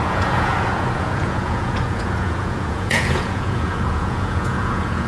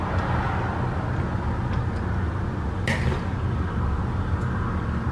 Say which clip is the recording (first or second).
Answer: second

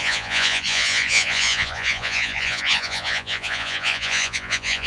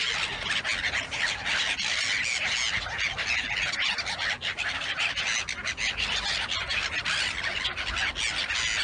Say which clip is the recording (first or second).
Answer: second